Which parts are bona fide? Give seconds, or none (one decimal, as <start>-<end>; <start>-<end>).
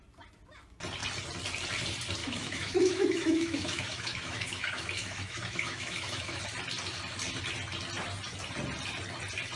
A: 0.0-2.2; 6.4-9.6